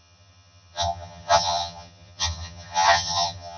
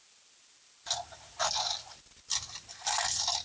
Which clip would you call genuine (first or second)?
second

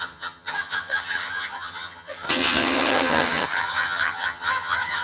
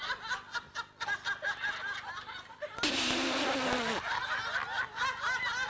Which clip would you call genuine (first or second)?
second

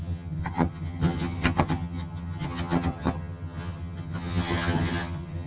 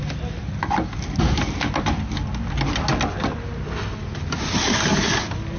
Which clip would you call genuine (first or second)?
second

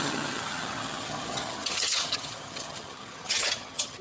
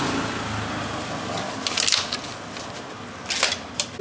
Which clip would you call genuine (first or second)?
second